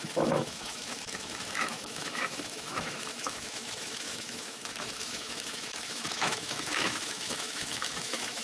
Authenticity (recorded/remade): remade